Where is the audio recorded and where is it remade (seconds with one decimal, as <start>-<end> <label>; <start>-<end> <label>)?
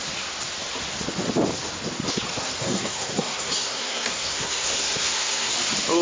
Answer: 0.0-2.3 recorded; 2.3-5.5 remade; 5.5-6.0 recorded